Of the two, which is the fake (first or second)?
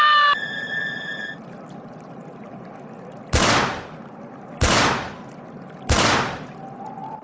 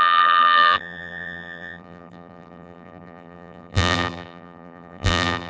second